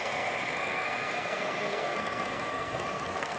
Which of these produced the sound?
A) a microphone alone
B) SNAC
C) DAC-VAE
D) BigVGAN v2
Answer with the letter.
B